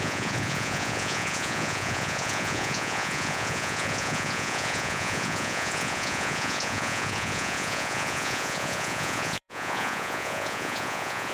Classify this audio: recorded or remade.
remade